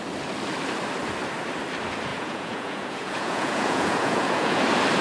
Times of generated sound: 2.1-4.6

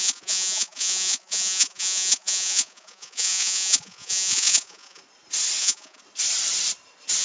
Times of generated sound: 0.0-5.0; 5.6-6.0